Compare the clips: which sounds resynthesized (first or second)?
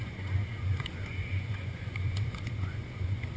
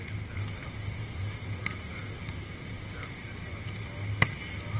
first